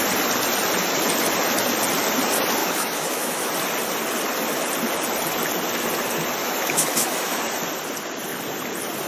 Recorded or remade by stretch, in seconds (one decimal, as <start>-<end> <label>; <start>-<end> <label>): 0.0-2.6 recorded; 2.6-3.5 remade; 3.5-6.4 recorded; 6.4-7.4 remade; 7.4-9.1 recorded